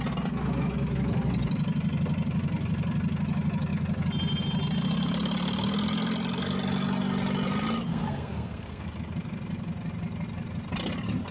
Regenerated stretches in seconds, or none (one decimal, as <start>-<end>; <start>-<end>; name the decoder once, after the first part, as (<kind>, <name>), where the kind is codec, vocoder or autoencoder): 7.9-8.8 (codec, SNAC)